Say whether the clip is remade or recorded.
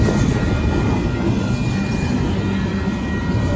recorded